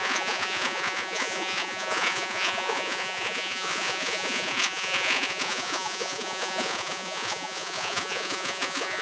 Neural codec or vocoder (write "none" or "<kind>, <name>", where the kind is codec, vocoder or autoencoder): vocoder, Vocos